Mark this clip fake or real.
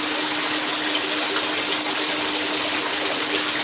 real